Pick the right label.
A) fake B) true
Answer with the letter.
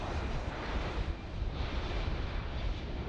A